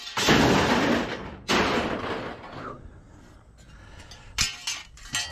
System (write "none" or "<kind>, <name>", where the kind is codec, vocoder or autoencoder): none